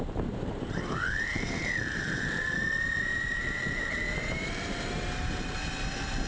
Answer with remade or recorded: remade